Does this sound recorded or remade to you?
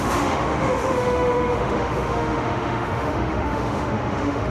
remade